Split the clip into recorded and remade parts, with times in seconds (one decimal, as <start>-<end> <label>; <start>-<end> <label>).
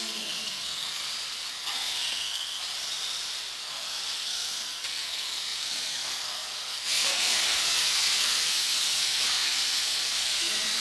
0.0-1.0 remade; 1.0-1.5 recorded; 1.5-2.6 remade; 2.6-3.6 recorded; 3.6-10.8 remade